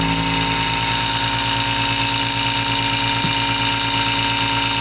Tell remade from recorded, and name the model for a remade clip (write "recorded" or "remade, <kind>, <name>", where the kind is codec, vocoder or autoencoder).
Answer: recorded